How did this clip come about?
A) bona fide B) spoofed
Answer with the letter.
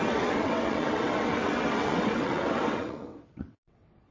B